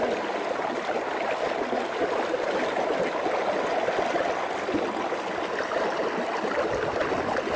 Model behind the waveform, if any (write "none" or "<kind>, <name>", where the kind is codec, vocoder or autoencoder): none